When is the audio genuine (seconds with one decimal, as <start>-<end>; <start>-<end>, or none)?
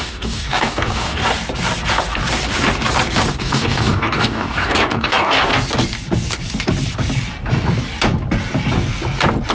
1.2-3.3; 5.5-9.5